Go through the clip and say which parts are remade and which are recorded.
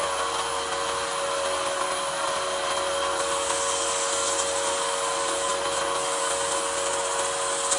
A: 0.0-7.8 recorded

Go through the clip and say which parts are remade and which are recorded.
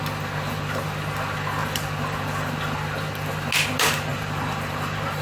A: 0.0-4.1 recorded; 4.1-5.2 remade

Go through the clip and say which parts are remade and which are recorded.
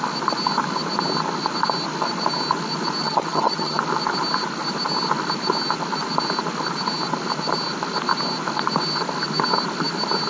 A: 0.0-3.0 recorded; 3.0-3.8 remade; 3.8-10.3 recorded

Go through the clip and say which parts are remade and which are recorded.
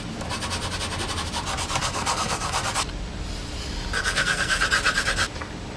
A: 0.0-1.8 recorded; 1.8-2.6 remade; 2.6-4.0 recorded; 4.0-4.6 remade; 4.6-5.8 recorded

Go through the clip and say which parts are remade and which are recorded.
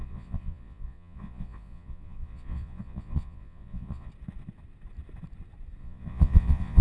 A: 0.0-4.1 remade; 4.1-5.8 recorded; 5.8-6.8 remade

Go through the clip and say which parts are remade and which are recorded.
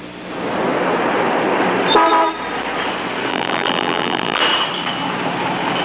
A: 0.0-3.3 recorded; 3.3-4.4 remade; 4.4-5.8 recorded